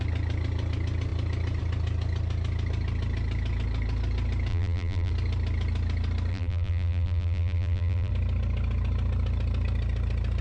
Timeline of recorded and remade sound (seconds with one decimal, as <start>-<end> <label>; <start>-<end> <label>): 0.0-4.5 recorded; 4.5-5.1 remade; 5.1-6.3 recorded; 6.3-8.1 remade; 8.1-10.4 recorded